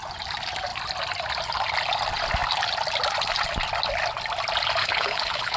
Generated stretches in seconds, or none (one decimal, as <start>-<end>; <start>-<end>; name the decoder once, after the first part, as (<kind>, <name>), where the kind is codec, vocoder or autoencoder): 4.8-5.6 (codec, HILCodec)